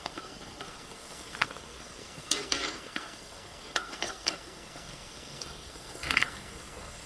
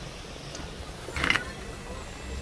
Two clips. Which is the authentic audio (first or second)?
second